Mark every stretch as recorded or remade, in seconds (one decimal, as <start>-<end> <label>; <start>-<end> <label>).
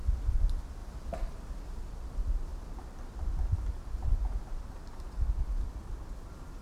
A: 0.0-6.6 recorded